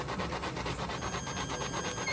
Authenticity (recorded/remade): recorded